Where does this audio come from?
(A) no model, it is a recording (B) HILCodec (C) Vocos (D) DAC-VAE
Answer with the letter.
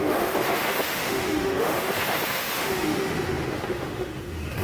D